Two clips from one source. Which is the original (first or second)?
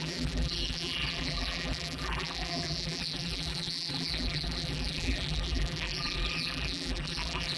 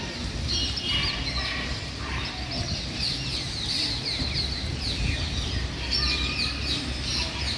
second